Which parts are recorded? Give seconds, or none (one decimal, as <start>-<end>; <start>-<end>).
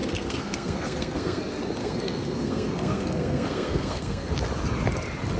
1.4-1.8; 4.3-5.4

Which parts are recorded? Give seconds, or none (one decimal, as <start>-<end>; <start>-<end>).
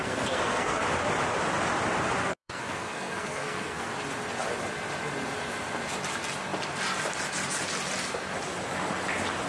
0.8-2.2; 3.9-9.5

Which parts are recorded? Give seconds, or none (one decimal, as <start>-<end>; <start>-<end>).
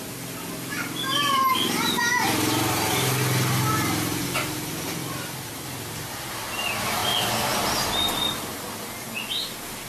0.0-9.9